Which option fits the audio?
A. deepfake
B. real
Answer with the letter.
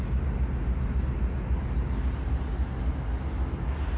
B